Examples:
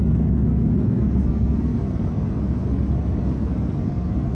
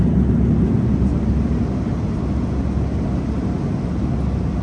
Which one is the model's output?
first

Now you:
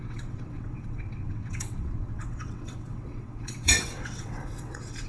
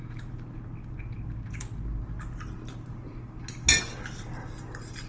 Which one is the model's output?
first